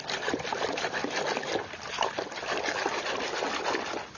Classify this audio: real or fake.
real